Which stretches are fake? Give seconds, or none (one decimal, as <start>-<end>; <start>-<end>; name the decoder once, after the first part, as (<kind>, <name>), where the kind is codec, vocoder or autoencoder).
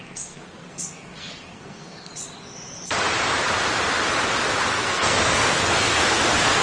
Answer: 0.0-2.1 (codec, SNAC); 4.7-6.6